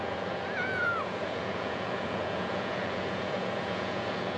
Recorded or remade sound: remade